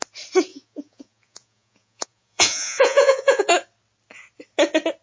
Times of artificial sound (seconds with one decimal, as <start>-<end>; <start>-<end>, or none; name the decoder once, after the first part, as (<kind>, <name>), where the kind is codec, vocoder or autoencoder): 0.5-3.5 (vocoder, Vocos)